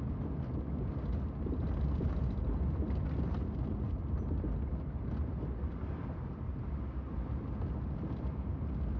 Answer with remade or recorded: recorded